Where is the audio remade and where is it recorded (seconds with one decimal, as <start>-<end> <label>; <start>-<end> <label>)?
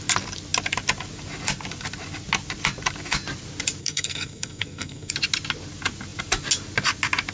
0.0-3.8 recorded; 3.8-5.1 remade; 5.1-7.3 recorded